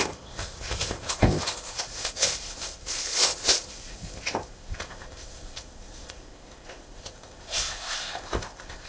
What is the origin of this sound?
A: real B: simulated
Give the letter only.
B